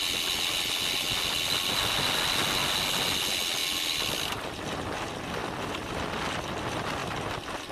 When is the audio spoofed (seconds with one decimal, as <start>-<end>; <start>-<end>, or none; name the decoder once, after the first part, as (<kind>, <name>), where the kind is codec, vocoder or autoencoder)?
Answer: none